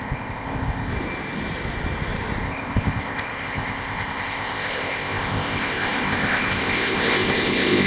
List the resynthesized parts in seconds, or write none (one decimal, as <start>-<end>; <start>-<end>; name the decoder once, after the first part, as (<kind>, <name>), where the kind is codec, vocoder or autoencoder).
0.0-0.9 (codec, ZipCodec); 2.4-7.9